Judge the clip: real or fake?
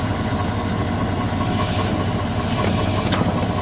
real